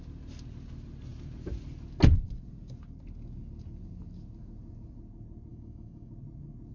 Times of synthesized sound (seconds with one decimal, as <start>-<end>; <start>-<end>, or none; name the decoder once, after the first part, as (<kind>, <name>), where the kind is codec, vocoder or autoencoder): 5.5-6.1 (autoencoder, DAC-VAE)